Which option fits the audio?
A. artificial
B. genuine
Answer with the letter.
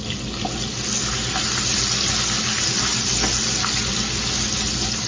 B